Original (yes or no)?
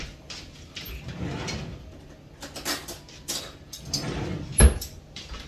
yes